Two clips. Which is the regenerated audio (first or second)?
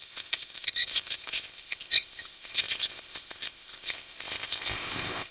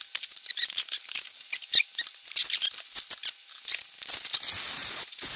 first